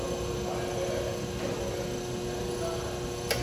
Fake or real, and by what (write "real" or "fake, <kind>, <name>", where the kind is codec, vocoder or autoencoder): real